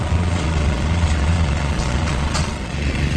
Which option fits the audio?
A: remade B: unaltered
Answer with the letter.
A